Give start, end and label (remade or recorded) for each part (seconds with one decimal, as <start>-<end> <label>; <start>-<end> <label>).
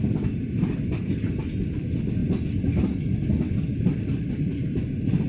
0.0-5.3 recorded